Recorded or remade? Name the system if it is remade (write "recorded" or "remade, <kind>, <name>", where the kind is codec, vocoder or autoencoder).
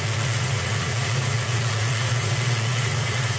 remade, vocoder, Vocos